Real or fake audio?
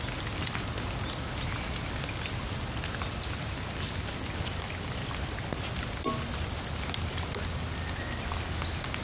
real